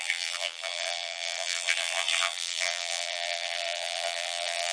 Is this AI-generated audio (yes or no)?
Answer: yes